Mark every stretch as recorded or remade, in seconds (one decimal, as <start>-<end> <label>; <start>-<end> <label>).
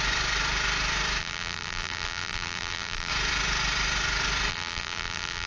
0.0-1.2 recorded; 1.2-3.1 remade; 3.1-4.5 recorded; 4.5-5.5 remade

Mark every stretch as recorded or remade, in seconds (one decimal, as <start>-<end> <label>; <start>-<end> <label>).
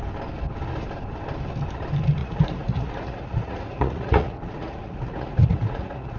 0.0-2.2 recorded; 2.2-6.2 remade